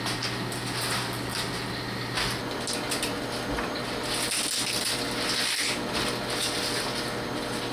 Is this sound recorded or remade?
recorded